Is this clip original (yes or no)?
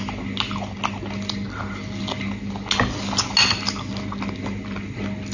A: yes